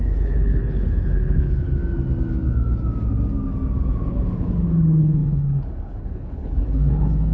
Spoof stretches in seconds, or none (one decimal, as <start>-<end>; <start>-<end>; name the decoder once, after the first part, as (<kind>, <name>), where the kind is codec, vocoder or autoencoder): 0.0-1.8 (codec, HILCodec); 4.1-7.3